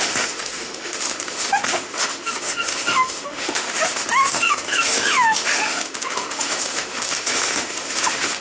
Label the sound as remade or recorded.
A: remade